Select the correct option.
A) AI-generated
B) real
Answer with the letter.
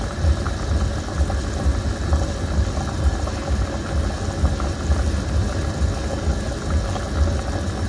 B